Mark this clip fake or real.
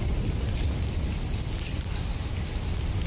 real